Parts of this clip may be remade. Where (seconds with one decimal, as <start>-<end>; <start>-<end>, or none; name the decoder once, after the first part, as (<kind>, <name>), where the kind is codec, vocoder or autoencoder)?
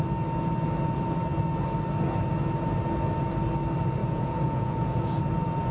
4.0-5.2 (vocoder, Vocos)